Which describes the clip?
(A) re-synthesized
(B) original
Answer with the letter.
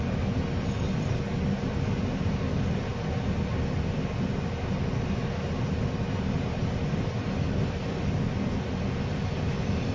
B